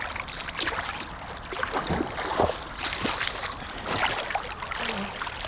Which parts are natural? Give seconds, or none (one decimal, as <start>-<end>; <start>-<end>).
0.0-5.5